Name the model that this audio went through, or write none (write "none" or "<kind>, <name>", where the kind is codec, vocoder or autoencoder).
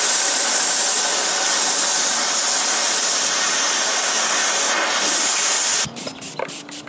none